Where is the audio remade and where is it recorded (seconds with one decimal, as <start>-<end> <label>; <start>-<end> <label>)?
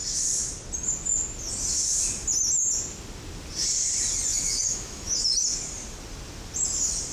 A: 0.0-4.3 recorded; 4.3-5.2 remade; 5.2-7.1 recorded